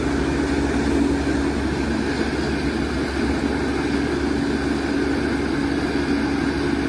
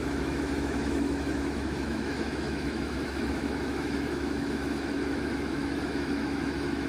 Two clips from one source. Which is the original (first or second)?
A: first